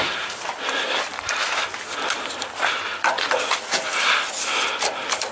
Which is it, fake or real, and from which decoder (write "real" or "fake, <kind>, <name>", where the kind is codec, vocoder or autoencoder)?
fake, vocoder, BigVGAN v2